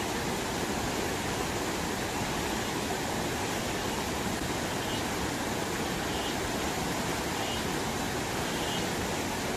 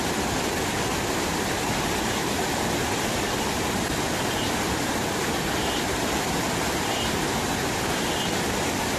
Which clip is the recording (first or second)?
first